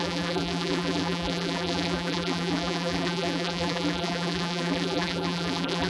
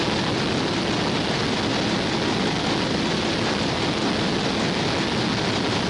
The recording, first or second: second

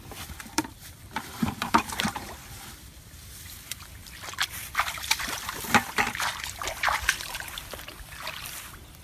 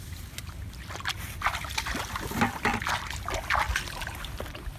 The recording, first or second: second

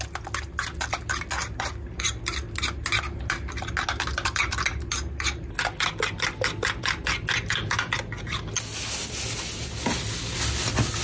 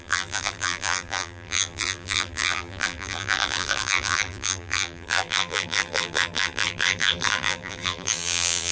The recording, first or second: first